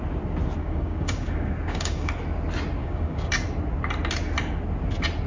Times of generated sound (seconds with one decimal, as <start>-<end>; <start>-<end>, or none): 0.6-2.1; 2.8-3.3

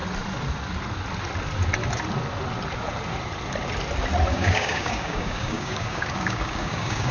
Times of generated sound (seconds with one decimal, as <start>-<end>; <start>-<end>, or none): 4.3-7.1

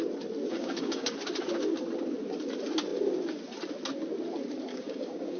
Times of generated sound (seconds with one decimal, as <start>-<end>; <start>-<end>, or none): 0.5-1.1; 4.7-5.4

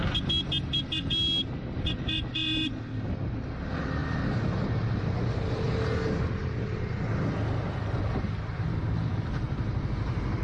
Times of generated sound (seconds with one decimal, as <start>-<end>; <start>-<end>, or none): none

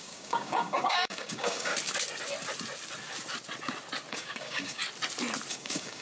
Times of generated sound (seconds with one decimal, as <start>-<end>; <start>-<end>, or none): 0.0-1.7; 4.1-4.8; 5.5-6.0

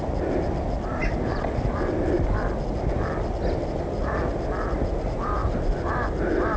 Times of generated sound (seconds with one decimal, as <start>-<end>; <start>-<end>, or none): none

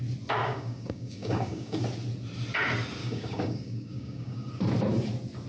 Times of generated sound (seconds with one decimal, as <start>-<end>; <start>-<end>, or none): 0.4-1.8; 3.0-4.5